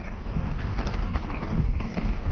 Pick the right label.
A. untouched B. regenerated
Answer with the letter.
B